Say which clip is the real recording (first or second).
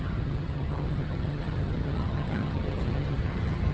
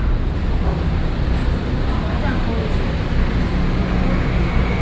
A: second